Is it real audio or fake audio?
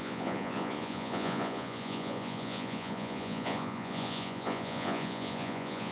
fake